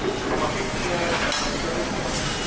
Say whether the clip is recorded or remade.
recorded